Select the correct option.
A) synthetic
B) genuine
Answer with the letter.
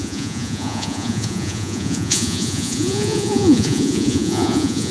A